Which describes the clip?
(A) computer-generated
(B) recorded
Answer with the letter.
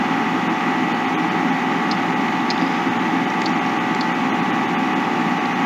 B